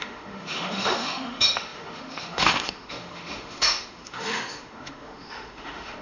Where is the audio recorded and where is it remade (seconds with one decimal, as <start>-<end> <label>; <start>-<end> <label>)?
0.0-6.0 remade